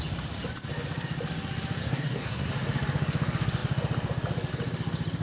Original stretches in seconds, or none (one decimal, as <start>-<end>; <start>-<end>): 0.0-1.8; 2.5-5.2